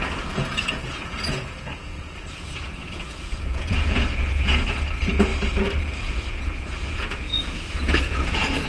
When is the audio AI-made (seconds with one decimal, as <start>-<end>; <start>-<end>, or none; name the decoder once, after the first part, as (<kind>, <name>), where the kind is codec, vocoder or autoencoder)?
0.0-5.3 (vocoder, Vocos); 5.8-8.7